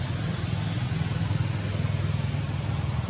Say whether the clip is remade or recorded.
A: recorded